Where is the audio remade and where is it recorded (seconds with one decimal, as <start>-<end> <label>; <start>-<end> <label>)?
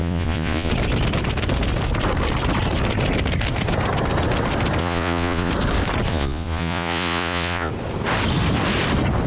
0.0-0.7 remade; 0.7-4.8 recorded; 4.8-5.5 remade; 5.5-6.1 recorded; 6.1-7.7 remade; 7.7-9.3 recorded